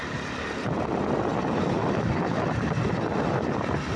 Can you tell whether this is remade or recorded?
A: recorded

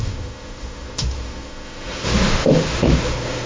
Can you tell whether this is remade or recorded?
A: remade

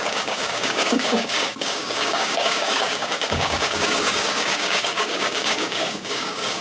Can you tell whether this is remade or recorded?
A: remade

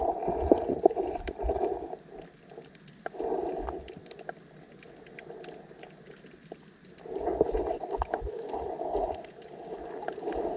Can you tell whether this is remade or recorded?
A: recorded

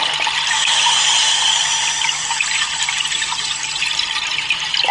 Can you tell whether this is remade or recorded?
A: remade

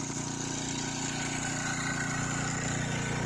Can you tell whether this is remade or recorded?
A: recorded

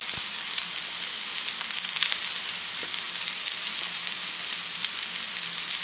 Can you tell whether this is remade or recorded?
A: recorded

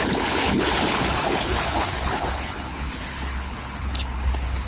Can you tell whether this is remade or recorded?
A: remade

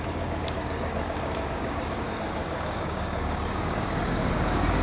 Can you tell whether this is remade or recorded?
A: remade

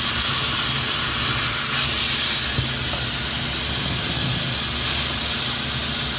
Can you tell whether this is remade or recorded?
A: recorded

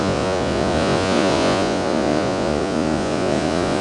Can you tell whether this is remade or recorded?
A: remade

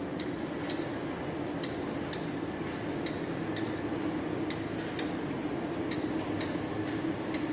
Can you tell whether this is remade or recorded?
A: recorded